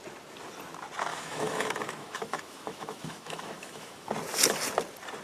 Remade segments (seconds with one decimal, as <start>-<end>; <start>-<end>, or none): 1.1-4.1